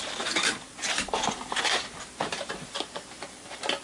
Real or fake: fake